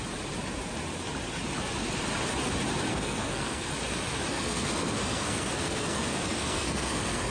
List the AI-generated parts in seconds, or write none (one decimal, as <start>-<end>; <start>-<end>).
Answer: 2.9-3.7; 4.3-7.3